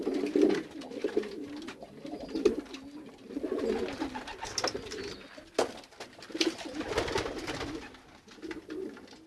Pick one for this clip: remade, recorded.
recorded